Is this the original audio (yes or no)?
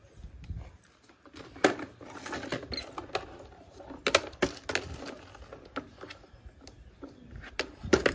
yes